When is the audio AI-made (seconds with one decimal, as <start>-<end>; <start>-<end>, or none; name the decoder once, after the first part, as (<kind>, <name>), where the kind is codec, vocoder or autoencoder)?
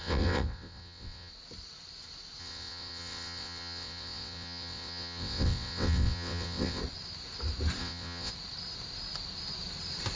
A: 0.0-1.3 (vocoder, WaveNeXt); 2.4-6.8; 7.8-8.3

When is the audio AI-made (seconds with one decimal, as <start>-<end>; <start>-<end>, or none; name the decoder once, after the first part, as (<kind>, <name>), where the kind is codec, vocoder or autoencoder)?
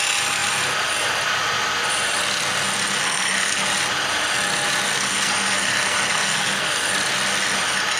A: 3.0-3.7 (codec, SNAC); 4.9-6.9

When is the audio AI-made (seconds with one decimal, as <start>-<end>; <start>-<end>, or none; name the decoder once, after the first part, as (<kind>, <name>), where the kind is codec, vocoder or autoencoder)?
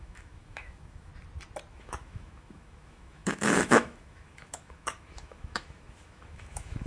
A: 0.0-1.1 (autoencoder, DAC-VAE); 1.7-6.9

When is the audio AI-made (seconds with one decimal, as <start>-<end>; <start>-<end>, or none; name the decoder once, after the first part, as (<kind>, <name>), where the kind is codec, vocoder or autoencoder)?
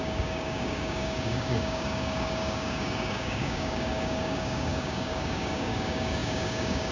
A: 0.0-6.9 (codec, DAC)